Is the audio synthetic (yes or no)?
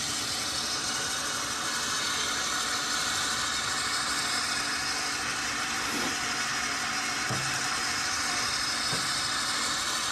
no